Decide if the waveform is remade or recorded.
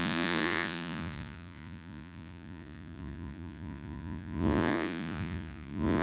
remade